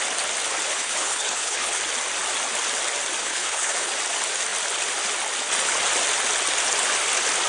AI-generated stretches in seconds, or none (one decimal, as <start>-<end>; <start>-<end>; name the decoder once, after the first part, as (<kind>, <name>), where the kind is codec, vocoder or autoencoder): 0.7-1.8 (codec, HILCodec); 3.2-3.9